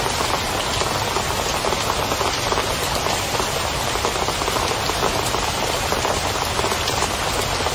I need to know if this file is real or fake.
real